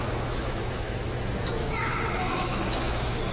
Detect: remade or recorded remade